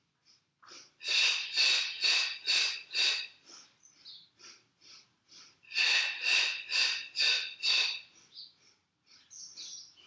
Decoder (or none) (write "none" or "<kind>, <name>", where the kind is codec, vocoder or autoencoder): none